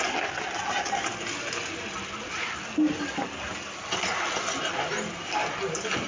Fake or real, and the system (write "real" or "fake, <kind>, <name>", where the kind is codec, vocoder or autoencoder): real